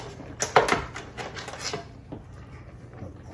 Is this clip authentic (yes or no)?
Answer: yes